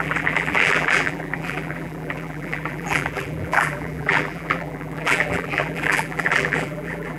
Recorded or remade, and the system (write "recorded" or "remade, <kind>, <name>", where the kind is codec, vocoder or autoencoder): remade, vocoder, BigVGAN v2